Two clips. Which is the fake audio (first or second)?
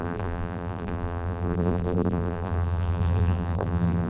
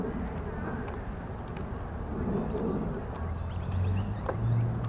first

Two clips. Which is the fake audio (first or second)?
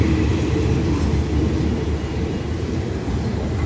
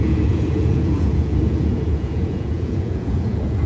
second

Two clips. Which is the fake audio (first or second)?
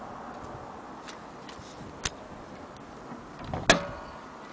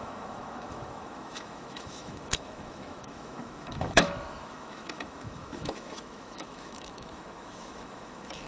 second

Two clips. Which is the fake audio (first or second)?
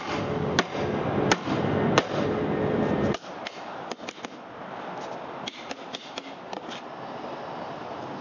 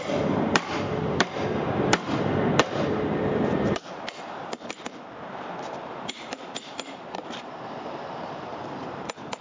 second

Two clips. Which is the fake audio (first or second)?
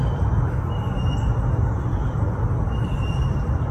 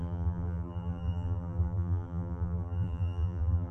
second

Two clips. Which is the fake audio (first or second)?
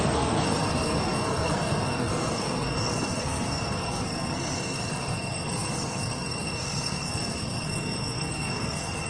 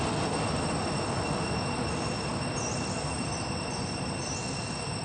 first